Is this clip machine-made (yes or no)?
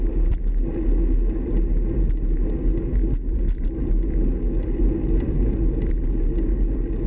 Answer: no